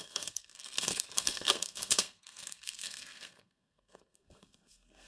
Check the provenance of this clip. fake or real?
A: fake